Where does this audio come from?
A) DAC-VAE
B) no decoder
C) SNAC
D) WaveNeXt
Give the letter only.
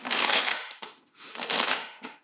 A